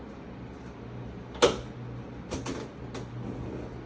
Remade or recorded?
recorded